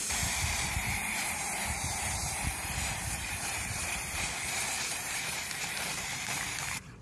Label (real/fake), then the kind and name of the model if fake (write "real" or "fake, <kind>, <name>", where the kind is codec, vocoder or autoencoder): fake, vocoder, BigVGAN v2